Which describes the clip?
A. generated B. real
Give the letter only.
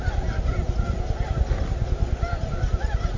B